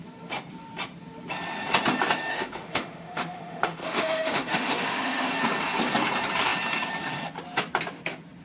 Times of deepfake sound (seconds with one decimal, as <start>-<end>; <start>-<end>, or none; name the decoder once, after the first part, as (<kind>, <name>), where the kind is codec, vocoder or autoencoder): 2.3-5.3 (autoencoder, DAC-VAE)